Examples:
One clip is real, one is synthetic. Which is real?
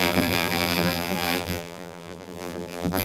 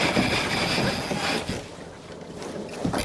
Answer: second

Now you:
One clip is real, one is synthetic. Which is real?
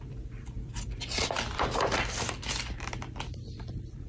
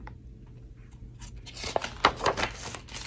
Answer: second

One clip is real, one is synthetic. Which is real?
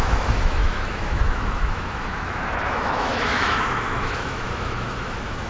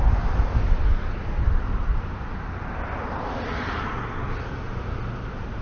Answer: second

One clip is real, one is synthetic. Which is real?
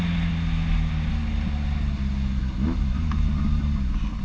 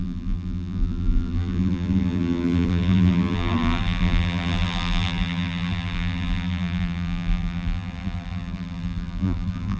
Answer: first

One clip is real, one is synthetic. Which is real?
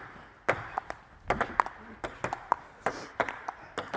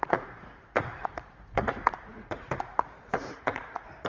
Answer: first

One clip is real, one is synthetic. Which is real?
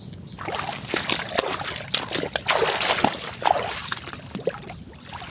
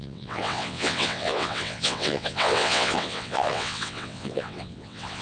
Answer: first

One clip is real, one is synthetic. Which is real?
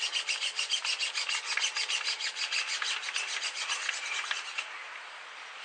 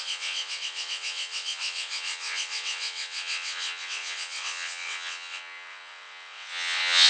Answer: first